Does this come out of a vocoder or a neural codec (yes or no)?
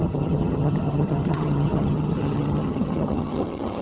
yes